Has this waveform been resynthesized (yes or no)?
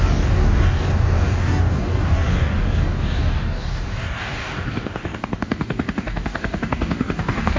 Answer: yes